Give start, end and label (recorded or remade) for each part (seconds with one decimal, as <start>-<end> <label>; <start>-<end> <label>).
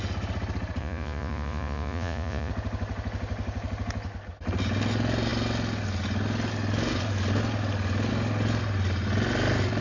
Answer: 0.0-0.8 recorded; 0.8-2.5 remade; 2.5-9.8 recorded